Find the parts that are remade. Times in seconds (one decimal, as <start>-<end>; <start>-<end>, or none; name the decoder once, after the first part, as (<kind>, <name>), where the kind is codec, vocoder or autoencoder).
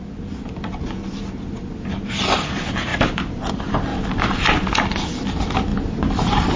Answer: 2.9-3.5 (vocoder, BigVGAN v2); 5.7-6.6